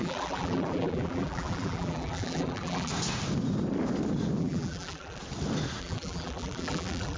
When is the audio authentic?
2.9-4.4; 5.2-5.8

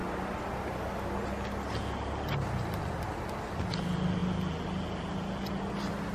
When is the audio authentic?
0.0-6.1

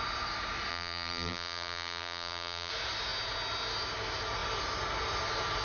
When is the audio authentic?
0.0-0.7; 2.7-5.6

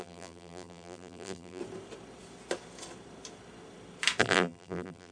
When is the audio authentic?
1.6-4.2